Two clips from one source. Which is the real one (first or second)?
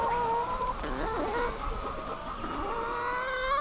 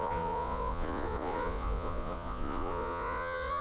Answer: first